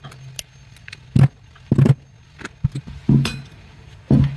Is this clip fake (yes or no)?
no